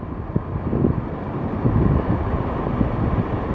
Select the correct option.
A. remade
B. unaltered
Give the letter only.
B